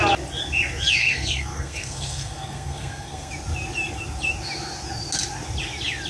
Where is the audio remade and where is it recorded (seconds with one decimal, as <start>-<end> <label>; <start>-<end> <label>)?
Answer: 0.0-1.0 recorded; 1.0-3.3 remade; 3.3-6.1 recorded